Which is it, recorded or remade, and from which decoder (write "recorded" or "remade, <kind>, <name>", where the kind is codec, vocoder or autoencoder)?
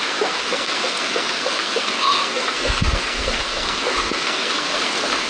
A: remade, codec, SNAC